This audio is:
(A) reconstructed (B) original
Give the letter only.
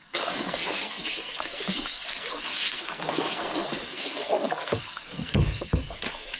A